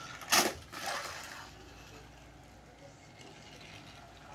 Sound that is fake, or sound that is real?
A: real